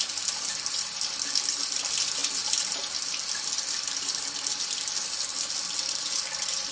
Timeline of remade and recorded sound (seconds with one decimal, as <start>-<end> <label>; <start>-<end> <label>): 0.0-6.7 recorded

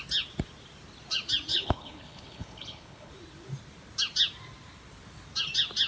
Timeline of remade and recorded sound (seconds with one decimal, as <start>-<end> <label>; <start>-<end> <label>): 0.0-1.5 recorded; 1.5-3.1 remade; 3.1-5.9 recorded

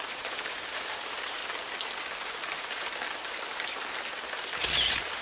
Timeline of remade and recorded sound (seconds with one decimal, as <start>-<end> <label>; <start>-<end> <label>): 0.0-1.4 remade; 1.4-2.2 recorded; 2.2-2.9 remade; 2.9-4.4 recorded; 4.4-5.2 remade

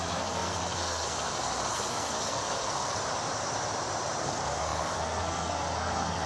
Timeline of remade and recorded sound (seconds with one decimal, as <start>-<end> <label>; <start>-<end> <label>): 0.0-3.0 remade; 3.0-4.2 recorded; 4.2-6.3 remade